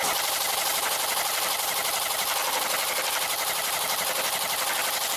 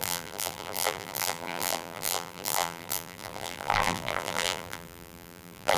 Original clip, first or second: first